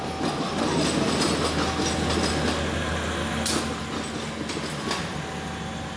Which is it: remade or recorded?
recorded